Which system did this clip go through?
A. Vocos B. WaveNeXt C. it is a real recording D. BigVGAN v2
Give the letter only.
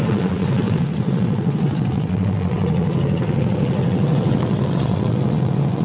B